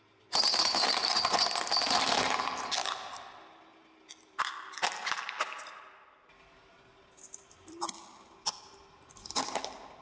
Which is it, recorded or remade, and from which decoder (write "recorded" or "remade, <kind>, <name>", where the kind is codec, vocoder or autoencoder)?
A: recorded